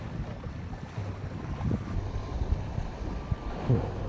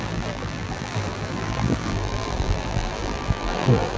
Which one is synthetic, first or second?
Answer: second